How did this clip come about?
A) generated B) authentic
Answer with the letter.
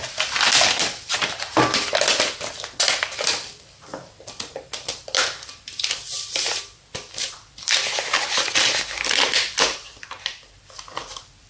A